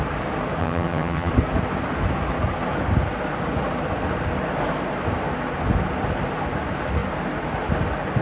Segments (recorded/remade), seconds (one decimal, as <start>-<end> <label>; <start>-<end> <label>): 0.0-0.6 recorded; 0.6-1.3 remade; 1.3-8.2 recorded